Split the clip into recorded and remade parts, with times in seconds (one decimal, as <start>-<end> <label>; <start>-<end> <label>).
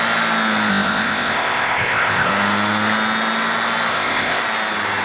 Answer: 0.0-0.7 recorded; 0.7-2.3 remade; 2.3-3.9 recorded; 3.9-4.4 remade; 4.4-5.0 recorded